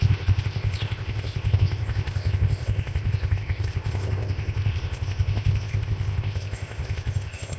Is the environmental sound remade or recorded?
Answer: remade